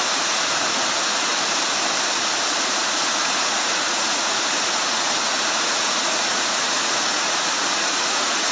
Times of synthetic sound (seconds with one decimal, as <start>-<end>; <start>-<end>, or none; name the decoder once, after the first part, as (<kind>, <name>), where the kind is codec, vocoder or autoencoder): 0.0-1.3 (vocoder, Vocos); 2.6-8.5